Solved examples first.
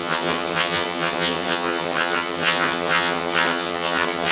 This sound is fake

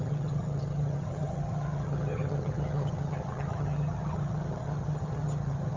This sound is fake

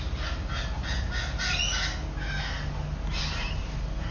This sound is real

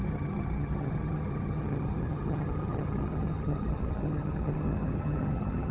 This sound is fake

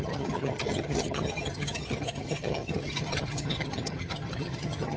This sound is fake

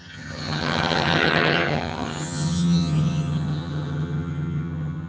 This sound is fake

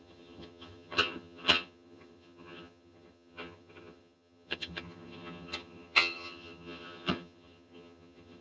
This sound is fake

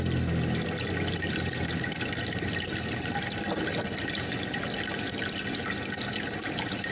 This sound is real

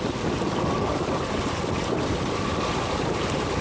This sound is real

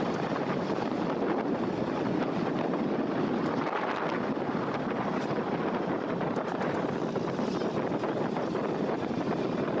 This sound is real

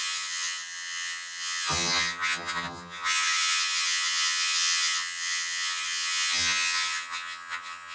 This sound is fake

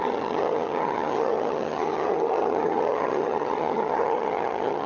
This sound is fake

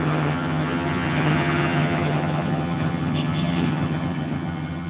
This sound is fake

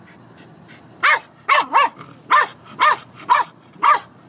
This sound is real